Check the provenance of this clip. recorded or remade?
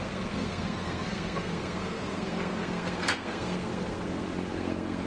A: remade